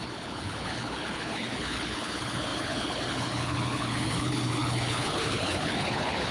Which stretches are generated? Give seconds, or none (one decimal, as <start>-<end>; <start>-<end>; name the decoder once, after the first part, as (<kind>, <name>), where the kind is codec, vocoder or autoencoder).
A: 0.0-6.3 (codec, HILCodec)